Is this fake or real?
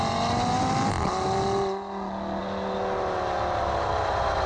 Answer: real